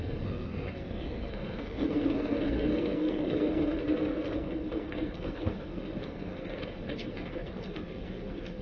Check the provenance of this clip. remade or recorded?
remade